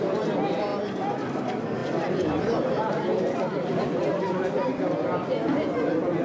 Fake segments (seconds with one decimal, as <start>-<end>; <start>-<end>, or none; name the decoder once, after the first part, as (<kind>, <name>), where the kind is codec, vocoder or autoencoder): 1.8-2.9 (vocoder, BigVGAN v2); 3.7-4.9